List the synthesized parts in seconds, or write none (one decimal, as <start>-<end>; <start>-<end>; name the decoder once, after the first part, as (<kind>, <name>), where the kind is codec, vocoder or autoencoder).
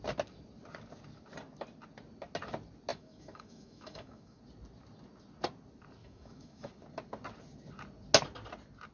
2.9-4.4 (autoencoder, DAC-VAE); 6.0-6.7